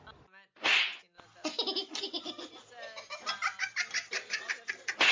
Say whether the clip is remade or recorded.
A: recorded